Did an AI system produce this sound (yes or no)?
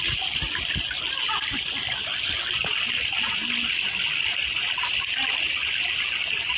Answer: no